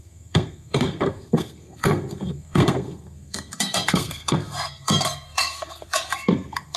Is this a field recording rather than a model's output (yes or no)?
no